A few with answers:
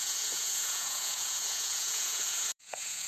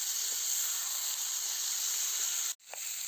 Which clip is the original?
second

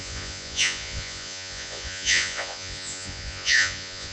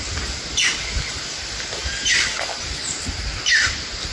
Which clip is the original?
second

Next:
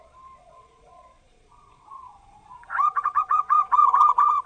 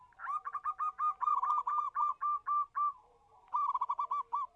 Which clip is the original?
second